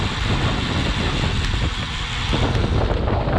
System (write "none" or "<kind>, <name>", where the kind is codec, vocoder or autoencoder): none